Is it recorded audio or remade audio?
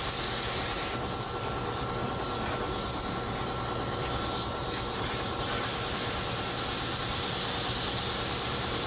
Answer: recorded